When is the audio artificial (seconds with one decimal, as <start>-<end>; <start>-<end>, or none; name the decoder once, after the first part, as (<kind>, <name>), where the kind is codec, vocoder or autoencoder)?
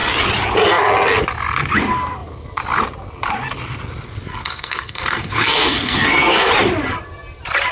4.3-6.5 (codec, SNAC)